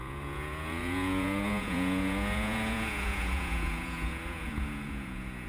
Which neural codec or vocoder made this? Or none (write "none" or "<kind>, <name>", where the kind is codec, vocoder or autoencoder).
vocoder, Vocos